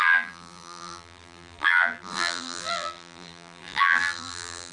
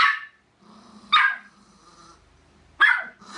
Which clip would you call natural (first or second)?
second